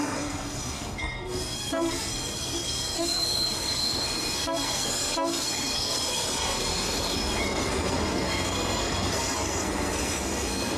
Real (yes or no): no